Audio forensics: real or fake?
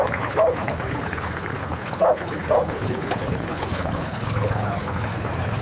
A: fake